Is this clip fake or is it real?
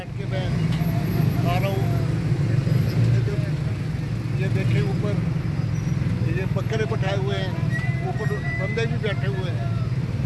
real